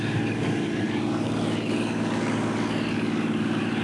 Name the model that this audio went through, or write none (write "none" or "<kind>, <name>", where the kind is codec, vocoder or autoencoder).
codec, DAC